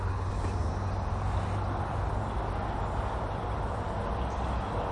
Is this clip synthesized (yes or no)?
no